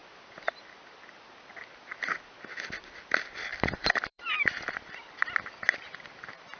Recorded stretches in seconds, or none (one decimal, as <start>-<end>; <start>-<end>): 0.0-3.5; 4.4-6.6